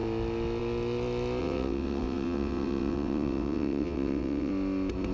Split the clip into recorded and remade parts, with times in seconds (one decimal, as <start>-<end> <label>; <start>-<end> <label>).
0.0-1.4 recorded; 1.4-4.5 remade; 4.5-5.1 recorded